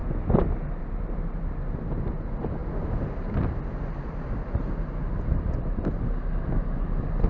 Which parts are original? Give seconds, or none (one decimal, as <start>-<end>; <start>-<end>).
0.0-0.8